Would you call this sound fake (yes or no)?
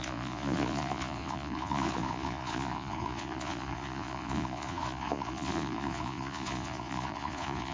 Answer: yes